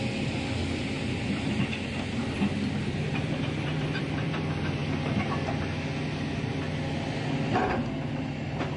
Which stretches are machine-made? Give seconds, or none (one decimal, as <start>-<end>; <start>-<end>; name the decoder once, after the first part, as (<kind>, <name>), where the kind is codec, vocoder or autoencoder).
0.0-0.6 (vocoder, BigVGAN v2); 2.5-4.8; 8.2-8.8